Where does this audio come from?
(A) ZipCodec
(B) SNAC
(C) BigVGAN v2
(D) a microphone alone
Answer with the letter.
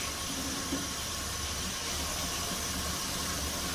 C